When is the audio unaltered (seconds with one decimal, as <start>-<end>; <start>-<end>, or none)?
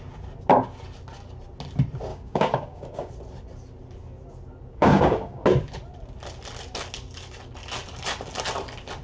0.0-2.1; 3.1-4.7; 5.4-9.0